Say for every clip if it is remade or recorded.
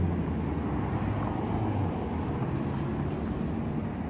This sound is recorded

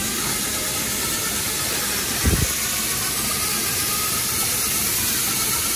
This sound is remade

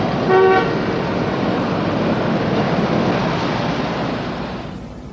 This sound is recorded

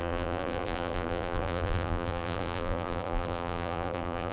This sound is remade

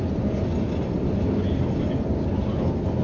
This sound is recorded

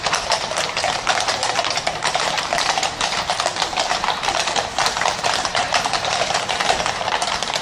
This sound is remade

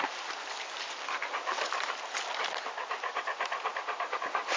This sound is remade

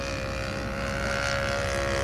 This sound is recorded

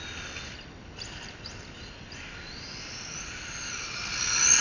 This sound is recorded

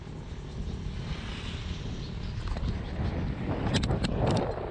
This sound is recorded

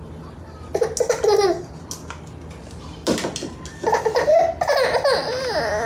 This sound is recorded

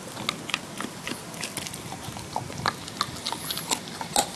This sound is recorded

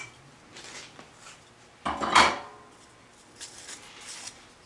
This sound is recorded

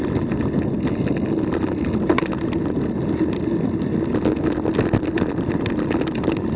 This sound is recorded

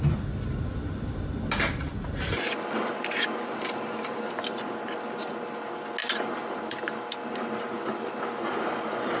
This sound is recorded